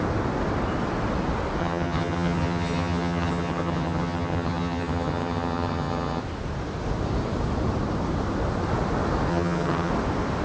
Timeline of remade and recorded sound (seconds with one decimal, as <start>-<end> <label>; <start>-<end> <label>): 0.0-1.6 recorded; 1.6-6.2 remade; 6.2-9.3 recorded; 9.3-9.9 remade; 9.9-10.4 recorded